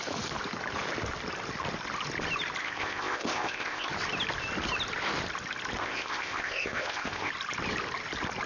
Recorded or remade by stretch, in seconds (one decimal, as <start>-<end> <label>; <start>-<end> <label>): 0.0-2.6 recorded; 2.6-3.9 remade; 3.9-5.8 recorded; 5.8-7.3 remade; 7.3-8.5 recorded